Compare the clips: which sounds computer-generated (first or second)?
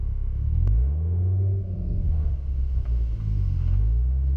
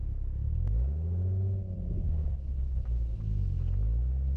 first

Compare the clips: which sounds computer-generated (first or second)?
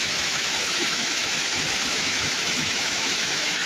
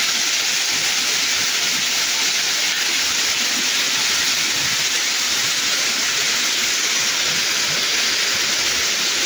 first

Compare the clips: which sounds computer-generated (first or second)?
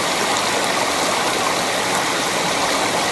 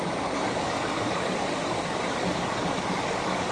second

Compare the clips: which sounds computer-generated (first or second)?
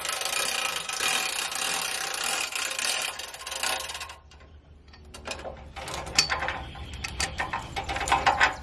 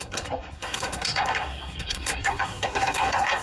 second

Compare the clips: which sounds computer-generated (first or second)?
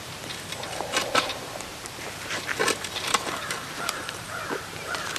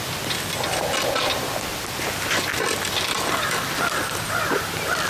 first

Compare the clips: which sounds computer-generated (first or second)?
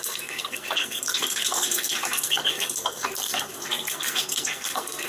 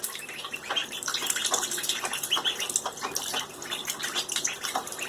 first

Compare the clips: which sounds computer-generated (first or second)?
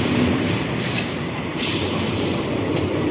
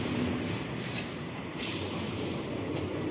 first